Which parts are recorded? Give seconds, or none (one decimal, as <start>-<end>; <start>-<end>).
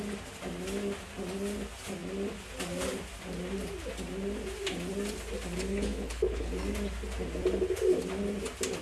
0.0-5.7; 6.5-8.8